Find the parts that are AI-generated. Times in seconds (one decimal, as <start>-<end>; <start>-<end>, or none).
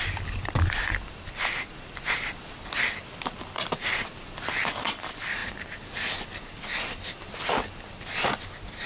none